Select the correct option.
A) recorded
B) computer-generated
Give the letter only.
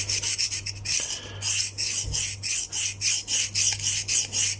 A